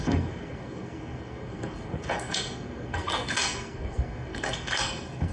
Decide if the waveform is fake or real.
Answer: fake